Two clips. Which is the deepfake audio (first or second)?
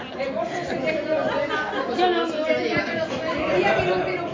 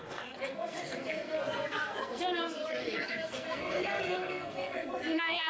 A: second